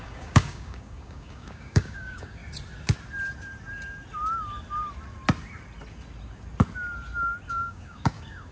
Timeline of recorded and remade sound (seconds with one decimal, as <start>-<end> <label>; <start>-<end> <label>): 0.0-2.4 remade; 2.4-7.5 recorded; 7.5-8.5 remade